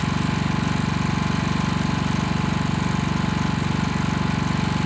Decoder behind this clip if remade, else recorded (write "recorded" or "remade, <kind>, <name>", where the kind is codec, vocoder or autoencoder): recorded